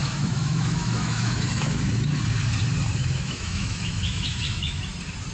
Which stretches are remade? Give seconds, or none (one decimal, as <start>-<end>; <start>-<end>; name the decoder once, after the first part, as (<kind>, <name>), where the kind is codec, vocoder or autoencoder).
0.0-1.9 (autoencoder, DAC-VAE); 3.0-4.8